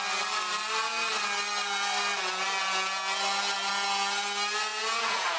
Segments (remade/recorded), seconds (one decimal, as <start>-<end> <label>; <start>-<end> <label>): 0.0-4.7 recorded; 4.7-5.4 remade